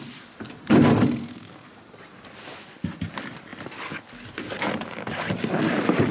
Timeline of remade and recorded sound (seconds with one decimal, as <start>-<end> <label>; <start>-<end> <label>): 0.0-1.2 recorded; 1.2-1.7 remade; 1.7-6.1 recorded